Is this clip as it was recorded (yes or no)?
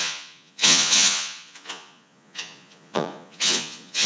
no